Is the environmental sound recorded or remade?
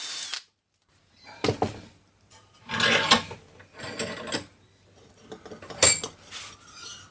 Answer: recorded